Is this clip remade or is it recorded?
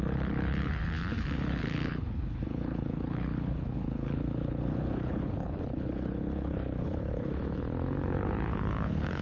remade